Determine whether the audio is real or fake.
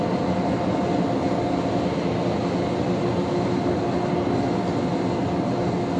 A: real